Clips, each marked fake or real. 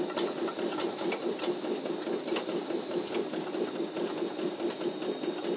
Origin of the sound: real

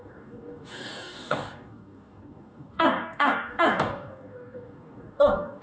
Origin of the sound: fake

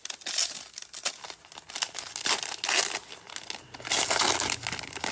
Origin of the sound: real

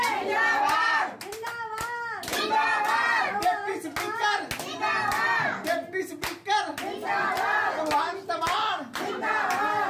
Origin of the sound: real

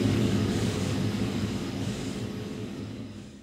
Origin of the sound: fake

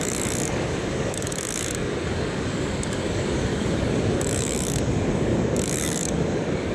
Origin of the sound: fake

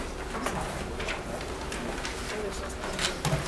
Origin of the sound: real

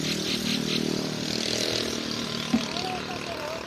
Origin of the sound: real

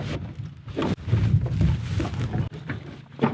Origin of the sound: real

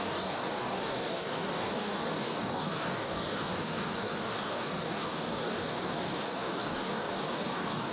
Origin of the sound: fake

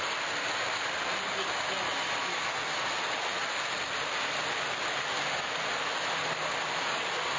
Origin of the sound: real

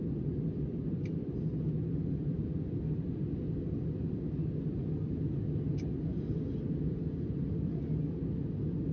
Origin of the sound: real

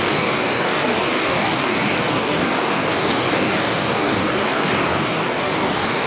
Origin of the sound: fake